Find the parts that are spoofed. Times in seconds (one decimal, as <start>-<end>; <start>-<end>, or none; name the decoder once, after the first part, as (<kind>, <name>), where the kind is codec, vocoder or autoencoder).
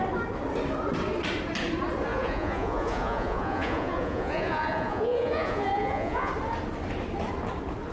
2.1-6.3 (vocoder, Vocos)